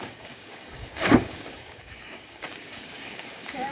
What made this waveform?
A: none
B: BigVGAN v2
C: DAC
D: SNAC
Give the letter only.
C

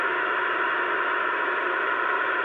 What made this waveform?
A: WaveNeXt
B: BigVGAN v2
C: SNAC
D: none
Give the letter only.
D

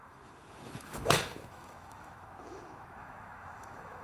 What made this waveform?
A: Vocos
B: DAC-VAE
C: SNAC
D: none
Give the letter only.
B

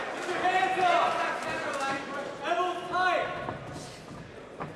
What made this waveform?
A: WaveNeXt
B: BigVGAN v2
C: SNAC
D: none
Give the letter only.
D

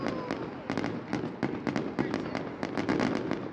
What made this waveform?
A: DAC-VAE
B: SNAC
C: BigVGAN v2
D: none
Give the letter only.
D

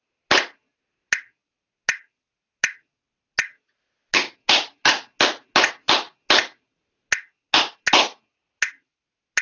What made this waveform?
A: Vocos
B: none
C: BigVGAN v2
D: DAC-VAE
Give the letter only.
B